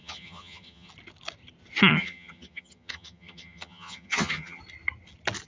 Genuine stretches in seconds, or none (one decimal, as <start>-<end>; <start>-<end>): 0.9-1.9; 4.6-5.5